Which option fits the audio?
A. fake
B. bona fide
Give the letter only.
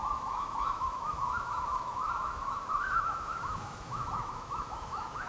A